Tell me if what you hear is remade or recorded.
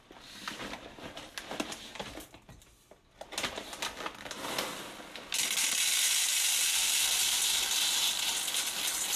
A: recorded